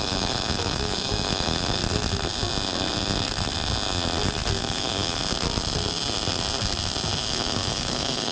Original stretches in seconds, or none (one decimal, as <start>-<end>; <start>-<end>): 1.8-4.6; 5.2-7.2